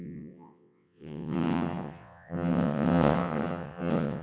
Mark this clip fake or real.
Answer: fake